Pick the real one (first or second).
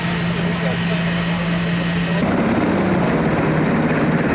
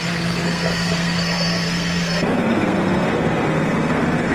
first